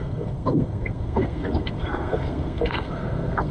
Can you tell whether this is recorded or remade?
remade